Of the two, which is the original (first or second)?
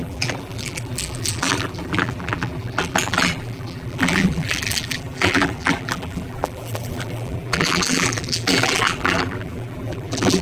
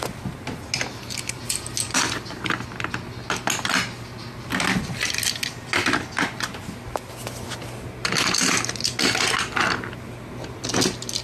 second